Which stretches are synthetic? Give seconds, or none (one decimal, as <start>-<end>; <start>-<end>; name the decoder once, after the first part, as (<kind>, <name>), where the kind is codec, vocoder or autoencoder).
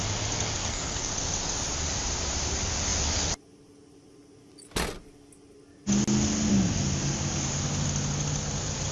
0.6-1.1 (codec, SNAC)